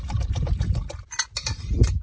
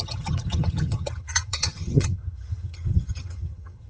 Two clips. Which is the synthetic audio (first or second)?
second